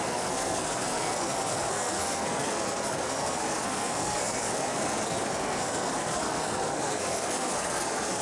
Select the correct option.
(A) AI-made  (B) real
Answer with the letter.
A